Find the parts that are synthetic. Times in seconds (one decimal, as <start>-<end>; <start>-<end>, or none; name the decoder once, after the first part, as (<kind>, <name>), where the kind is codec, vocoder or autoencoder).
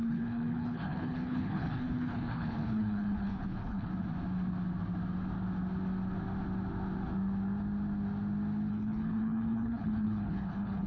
0.0-3.9 (codec, HILCodec); 8.7-10.9